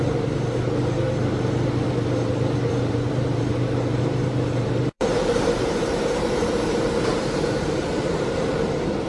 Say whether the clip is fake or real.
fake